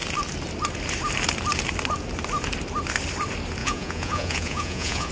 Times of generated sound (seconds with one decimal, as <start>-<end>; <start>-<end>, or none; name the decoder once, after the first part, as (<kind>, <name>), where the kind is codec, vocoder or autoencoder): 3.6-5.1 (vocoder, Vocos)